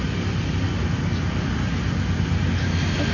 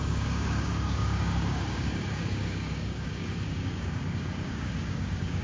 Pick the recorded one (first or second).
first